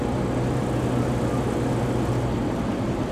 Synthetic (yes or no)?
no